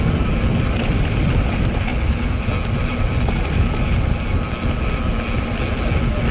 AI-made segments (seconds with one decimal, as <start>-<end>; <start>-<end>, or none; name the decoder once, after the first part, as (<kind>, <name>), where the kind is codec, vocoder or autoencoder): none